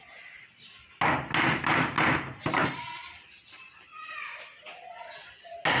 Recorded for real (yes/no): yes